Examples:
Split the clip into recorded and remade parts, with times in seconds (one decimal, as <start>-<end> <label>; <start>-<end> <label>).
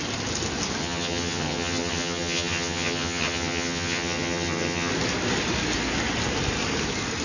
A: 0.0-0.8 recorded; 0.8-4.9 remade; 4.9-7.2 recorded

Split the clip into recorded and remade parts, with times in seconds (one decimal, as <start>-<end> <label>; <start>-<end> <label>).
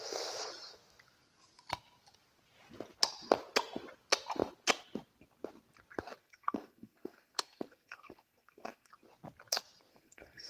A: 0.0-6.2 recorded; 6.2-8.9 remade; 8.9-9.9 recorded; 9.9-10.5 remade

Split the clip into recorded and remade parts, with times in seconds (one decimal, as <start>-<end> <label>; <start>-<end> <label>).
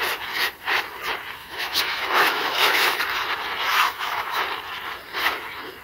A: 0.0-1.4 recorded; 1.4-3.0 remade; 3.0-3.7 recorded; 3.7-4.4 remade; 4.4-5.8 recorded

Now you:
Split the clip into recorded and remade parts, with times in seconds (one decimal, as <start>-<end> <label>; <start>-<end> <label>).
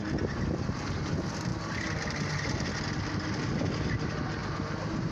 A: 0.0-5.1 recorded